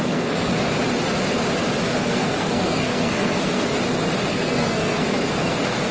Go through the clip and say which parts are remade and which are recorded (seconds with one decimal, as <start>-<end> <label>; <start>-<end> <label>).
0.0-0.5 remade; 0.5-1.9 recorded; 1.9-3.7 remade; 3.7-4.3 recorded; 4.3-5.9 remade